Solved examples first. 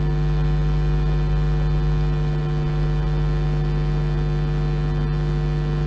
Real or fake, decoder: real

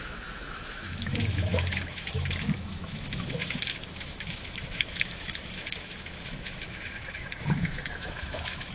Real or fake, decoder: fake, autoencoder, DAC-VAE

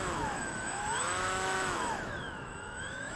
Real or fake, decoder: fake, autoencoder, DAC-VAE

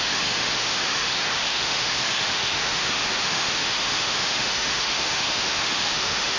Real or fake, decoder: fake, autoencoder, DAC-VAE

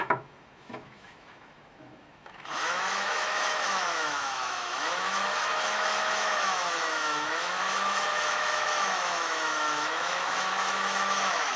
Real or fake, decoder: fake, autoencoder, DAC-VAE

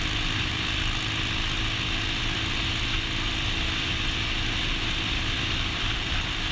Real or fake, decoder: real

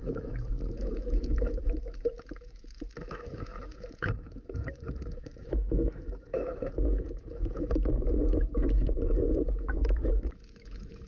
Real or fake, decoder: fake, autoencoder, DAC-VAE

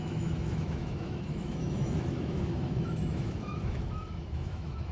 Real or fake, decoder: fake, autoencoder, DAC-VAE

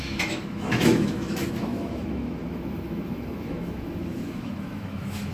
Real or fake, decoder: fake, autoencoder, DAC-VAE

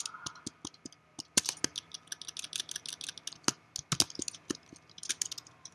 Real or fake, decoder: real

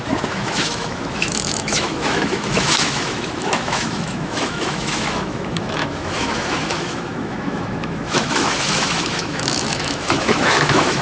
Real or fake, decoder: fake, autoencoder, DAC-VAE